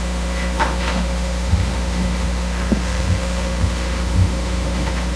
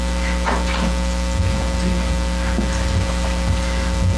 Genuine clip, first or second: second